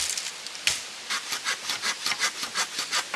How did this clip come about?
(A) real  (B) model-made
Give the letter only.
A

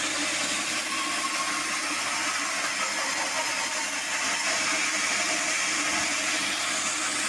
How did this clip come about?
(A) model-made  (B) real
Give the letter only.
B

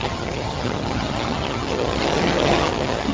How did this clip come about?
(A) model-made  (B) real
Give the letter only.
A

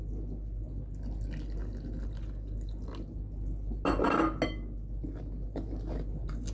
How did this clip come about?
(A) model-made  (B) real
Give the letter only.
B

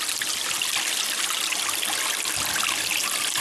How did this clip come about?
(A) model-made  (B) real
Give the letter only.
B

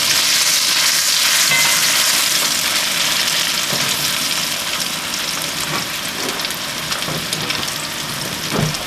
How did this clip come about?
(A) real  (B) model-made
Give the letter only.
A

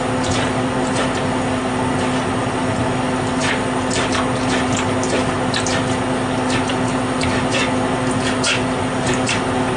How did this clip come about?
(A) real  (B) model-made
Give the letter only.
A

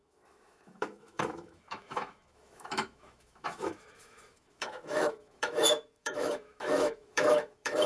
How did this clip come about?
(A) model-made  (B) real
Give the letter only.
A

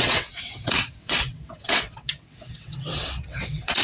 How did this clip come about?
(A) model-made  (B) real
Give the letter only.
A